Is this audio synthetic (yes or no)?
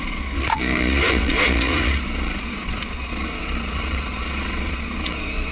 yes